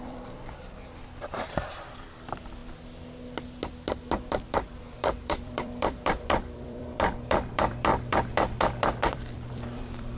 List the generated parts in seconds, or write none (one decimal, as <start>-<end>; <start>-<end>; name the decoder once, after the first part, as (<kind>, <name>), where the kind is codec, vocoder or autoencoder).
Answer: 0.0-2.6 (vocoder, BigVGAN v2); 4.2-10.2